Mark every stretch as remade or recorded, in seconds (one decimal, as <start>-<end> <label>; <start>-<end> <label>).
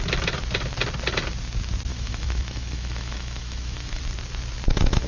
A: 0.0-1.9 recorded; 1.9-4.0 remade; 4.0-5.1 recorded